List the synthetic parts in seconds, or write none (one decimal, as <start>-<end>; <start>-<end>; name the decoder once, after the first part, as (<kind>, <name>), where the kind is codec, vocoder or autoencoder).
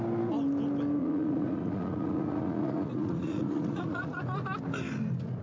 1.0-4.2 (vocoder, Vocos)